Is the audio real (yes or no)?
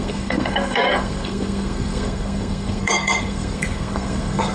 no